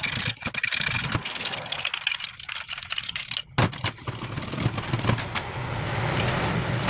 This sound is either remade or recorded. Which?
recorded